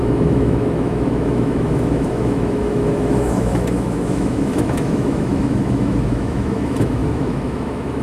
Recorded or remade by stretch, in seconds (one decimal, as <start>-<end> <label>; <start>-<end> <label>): 0.0-8.0 remade